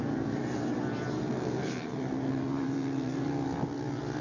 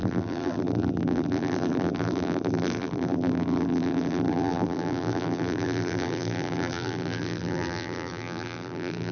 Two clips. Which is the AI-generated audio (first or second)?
second